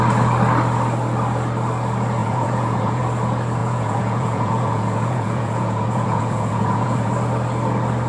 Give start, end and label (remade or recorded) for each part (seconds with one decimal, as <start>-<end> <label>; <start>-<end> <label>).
0.0-2.2 recorded; 2.2-3.0 remade; 3.0-3.6 recorded; 3.6-7.1 remade; 7.1-8.1 recorded